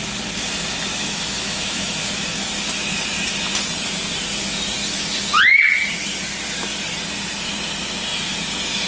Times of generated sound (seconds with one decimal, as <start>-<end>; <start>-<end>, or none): 0.9-2.0